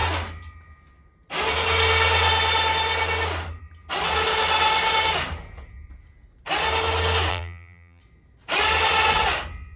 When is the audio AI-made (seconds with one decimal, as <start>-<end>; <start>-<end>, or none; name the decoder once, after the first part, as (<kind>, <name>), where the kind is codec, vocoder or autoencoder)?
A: 7.3-8.0 (vocoder, BigVGAN v2)